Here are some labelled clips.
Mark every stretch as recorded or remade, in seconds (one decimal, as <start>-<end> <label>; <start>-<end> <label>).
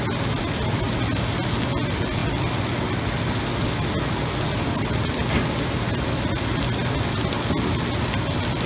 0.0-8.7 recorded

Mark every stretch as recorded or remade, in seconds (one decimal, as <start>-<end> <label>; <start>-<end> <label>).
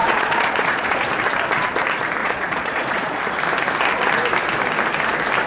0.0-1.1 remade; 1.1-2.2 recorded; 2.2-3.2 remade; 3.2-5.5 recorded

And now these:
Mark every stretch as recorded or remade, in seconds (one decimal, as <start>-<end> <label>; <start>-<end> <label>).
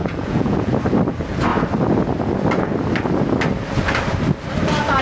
0.0-0.7 remade; 0.7-5.0 recorded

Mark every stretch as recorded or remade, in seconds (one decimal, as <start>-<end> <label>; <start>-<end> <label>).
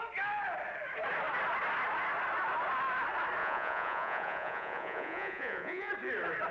0.0-3.4 recorded; 3.4-5.9 remade; 5.9-6.5 recorded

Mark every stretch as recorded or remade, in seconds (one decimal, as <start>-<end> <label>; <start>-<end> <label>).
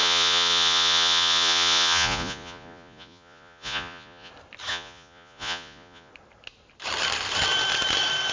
0.0-4.3 remade; 4.3-4.7 recorded; 4.7-6.1 remade; 6.1-8.3 recorded